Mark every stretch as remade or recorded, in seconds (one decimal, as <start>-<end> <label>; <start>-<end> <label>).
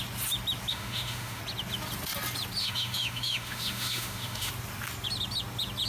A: 0.0-0.7 recorded; 0.7-1.4 remade; 1.4-2.6 recorded; 2.6-4.5 remade; 4.5-5.9 recorded